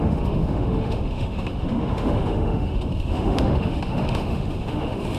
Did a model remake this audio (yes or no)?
yes